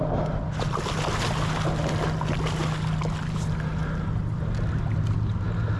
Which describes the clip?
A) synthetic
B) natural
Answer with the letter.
B